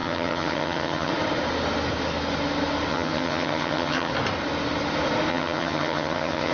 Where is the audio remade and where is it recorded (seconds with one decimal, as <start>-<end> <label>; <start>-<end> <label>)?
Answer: 0.0-1.1 remade; 1.1-2.9 recorded; 2.9-4.1 remade; 4.1-5.3 recorded; 5.3-6.5 remade